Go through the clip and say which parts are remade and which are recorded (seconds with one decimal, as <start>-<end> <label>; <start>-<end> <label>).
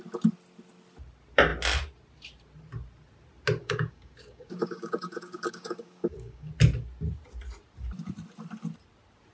0.0-3.6 recorded; 3.6-6.5 remade; 6.5-9.3 recorded